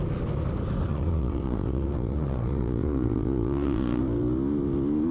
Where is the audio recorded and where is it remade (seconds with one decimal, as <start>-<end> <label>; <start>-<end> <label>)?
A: 0.0-0.9 recorded; 0.9-4.0 remade; 4.0-5.1 recorded